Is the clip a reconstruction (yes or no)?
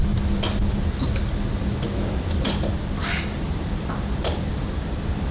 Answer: no